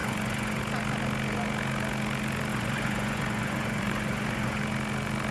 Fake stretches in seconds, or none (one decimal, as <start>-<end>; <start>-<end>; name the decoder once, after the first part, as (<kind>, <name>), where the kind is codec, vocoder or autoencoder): 0.0-0.6 (vocoder, Vocos); 2.5-4.6